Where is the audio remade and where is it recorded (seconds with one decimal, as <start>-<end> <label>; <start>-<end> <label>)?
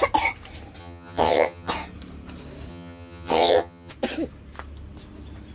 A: 0.0-0.8 recorded; 0.8-1.7 remade; 1.7-2.7 recorded; 2.7-3.9 remade; 3.9-5.5 recorded